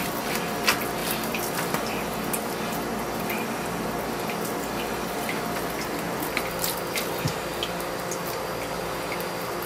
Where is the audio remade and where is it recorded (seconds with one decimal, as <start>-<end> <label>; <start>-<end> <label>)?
0.0-1.0 recorded; 1.0-2.5 remade; 2.5-9.7 recorded